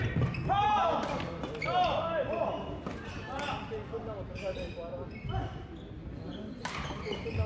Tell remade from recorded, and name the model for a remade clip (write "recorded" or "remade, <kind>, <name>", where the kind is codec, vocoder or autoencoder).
recorded